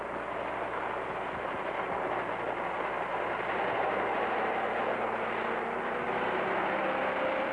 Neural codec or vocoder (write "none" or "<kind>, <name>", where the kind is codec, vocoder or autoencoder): none